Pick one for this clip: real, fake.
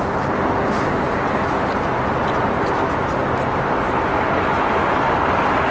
real